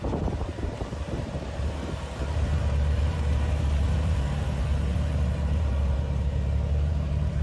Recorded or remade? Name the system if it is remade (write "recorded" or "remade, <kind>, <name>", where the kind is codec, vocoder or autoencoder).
remade, vocoder, BigVGAN v2